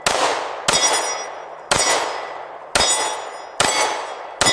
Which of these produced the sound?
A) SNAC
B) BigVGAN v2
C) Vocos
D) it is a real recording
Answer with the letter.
D